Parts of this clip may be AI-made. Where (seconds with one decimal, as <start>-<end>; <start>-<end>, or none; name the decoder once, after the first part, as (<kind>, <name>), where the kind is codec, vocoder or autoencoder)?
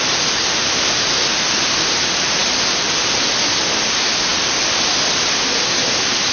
2.4-3.4 (vocoder, BigVGAN v2); 4.3-5.3